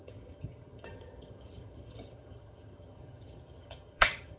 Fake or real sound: fake